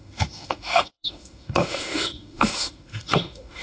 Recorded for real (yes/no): no